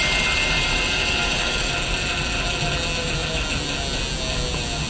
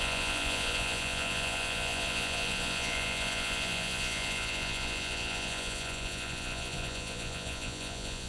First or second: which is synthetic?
second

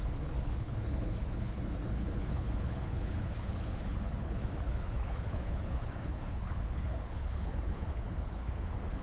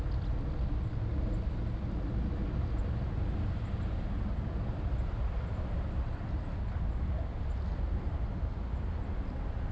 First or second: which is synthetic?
first